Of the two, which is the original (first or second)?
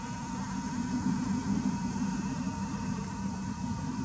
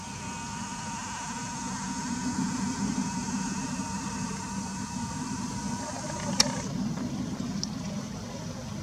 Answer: first